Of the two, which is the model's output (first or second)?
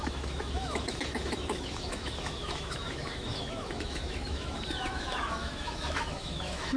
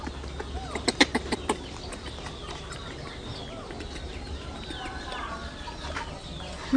first